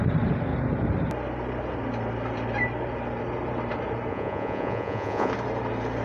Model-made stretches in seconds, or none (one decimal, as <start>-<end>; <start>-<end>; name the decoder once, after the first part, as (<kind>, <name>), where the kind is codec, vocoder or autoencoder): 4.1-5.3 (vocoder, Vocos)